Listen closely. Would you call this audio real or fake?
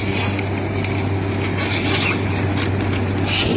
real